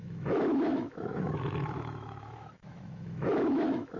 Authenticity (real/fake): fake